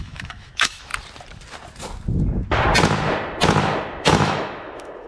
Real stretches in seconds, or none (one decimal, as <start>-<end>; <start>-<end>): 0.9-4.0